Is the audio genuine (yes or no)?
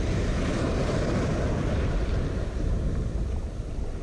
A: yes